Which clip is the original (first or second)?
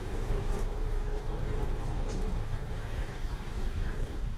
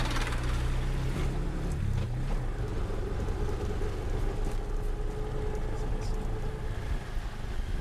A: second